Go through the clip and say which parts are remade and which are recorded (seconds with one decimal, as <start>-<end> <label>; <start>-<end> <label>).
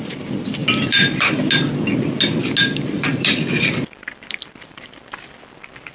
0.0-0.6 recorded; 0.6-1.3 remade; 1.3-2.6 recorded; 2.6-4.5 remade; 4.5-5.9 recorded